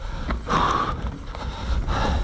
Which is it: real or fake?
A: real